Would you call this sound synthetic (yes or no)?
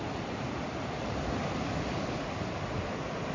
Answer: no